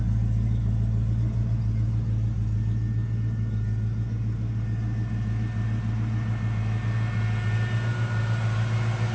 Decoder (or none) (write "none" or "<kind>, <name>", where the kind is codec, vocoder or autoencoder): none